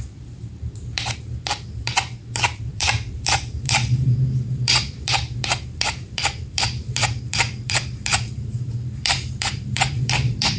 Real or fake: fake